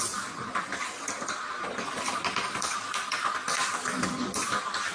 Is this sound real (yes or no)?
yes